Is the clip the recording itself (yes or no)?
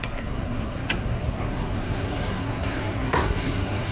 no